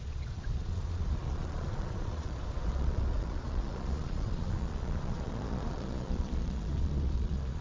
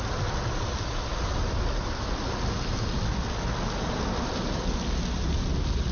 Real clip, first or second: second